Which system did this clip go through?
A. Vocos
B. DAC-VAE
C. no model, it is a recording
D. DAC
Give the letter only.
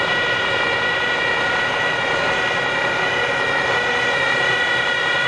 C